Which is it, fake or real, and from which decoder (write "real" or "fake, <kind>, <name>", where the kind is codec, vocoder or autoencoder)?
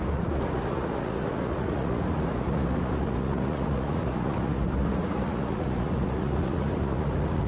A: fake, vocoder, Vocos